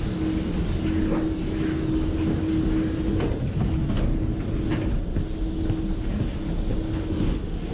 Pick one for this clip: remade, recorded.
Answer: recorded